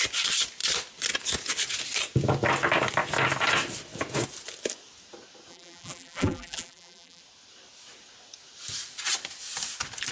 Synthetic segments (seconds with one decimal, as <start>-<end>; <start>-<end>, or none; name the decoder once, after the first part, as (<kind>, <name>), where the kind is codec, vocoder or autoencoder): 5.5-7.2 (vocoder, BigVGAN v2)